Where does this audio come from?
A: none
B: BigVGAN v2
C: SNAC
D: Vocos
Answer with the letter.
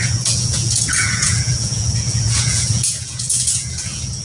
D